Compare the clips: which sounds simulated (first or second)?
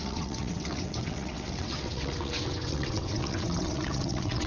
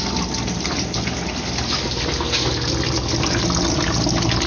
first